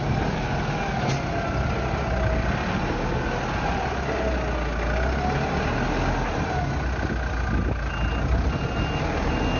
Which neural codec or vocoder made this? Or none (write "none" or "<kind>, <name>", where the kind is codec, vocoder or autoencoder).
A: none